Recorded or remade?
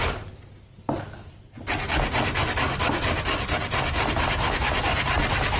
recorded